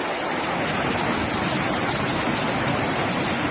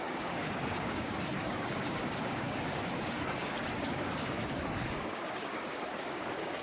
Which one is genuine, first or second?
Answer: first